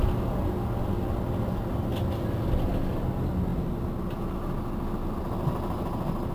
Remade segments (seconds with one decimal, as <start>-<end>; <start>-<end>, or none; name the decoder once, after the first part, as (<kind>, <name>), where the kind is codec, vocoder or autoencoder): none